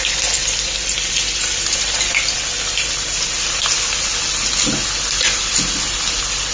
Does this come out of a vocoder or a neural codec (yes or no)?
no